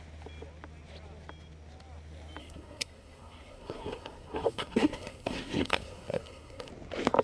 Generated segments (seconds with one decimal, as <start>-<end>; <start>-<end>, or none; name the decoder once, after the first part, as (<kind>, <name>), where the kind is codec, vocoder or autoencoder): 2.4-6.7 (codec, SNAC)